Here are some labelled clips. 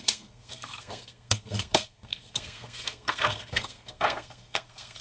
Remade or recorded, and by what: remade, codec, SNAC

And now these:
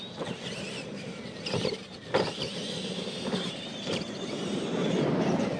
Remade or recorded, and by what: remade, vocoder, BigVGAN v2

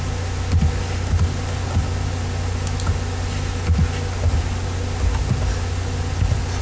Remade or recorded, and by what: recorded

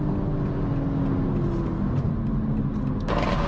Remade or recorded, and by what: recorded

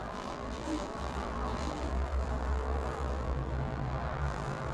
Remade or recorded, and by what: remade, vocoder, BigVGAN v2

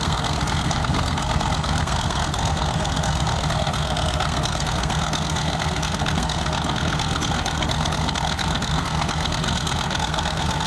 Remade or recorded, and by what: remade, codec, SNAC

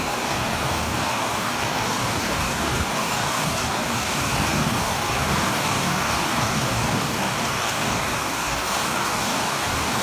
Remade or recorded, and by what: remade, codec, DAC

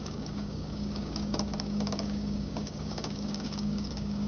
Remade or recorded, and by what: remade, codec, DAC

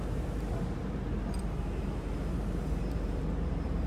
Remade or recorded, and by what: remade, vocoder, BigVGAN v2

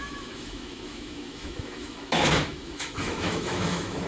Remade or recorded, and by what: remade, autoencoder, DAC-VAE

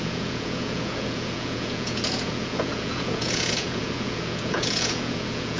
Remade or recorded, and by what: remade, vocoder, Vocos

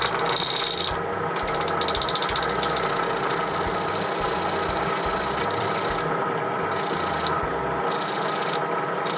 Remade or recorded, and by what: recorded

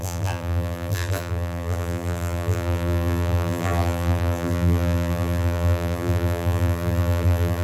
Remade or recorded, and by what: remade, vocoder, BigVGAN v2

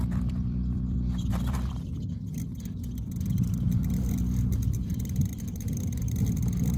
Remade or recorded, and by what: remade, vocoder, BigVGAN v2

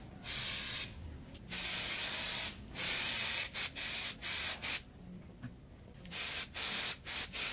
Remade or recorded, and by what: remade, vocoder, BigVGAN v2